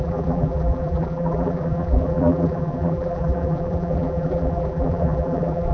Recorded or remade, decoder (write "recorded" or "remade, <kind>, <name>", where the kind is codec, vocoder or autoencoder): remade, vocoder, BigVGAN v2